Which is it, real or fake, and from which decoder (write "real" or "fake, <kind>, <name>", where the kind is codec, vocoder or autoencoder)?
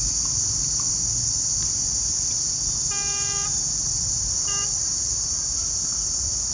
real